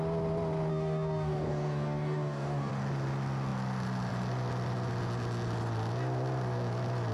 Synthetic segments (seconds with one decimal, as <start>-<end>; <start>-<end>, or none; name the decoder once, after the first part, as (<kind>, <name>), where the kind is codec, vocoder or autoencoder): 0.7-2.7 (codec, DAC)